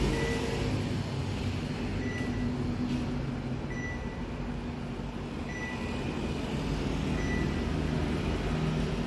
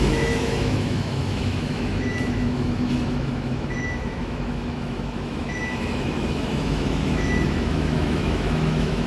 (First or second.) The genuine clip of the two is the first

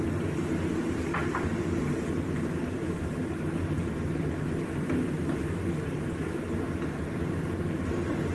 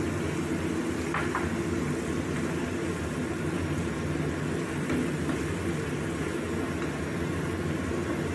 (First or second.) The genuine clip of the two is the second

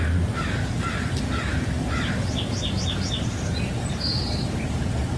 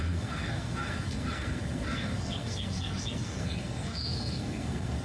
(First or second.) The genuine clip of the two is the first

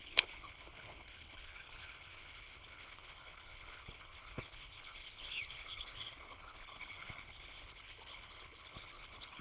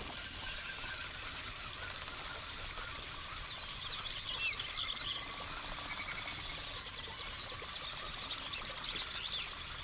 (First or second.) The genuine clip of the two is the second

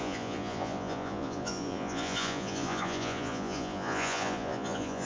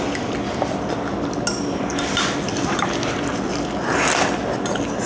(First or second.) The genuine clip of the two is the second